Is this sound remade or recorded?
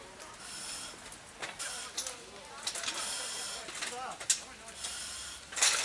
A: recorded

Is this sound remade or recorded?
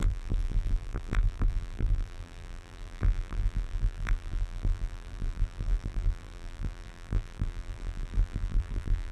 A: remade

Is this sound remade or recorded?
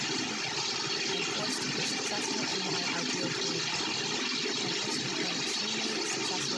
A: recorded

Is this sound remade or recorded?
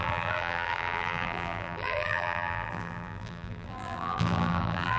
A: remade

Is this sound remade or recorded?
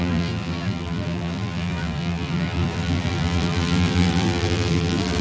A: remade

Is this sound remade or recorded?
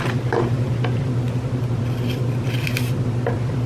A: remade